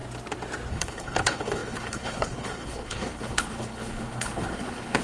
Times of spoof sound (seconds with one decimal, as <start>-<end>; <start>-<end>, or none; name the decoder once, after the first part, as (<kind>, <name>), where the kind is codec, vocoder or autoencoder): 0.7-5.0 (codec, HILCodec)